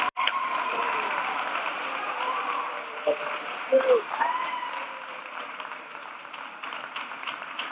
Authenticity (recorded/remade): remade